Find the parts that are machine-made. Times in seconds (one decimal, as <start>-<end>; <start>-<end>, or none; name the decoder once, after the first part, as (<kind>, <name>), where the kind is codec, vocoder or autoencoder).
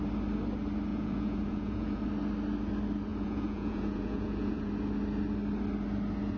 0.9-2.0 (vocoder, Vocos); 3.1-4.7